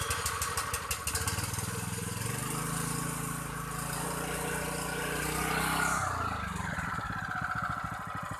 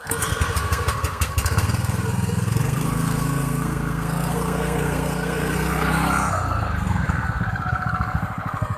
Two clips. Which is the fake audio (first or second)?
second